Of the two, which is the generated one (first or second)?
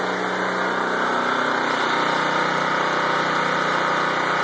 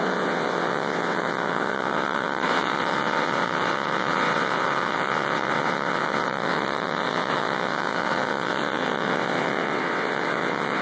second